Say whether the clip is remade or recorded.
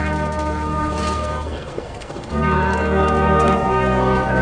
remade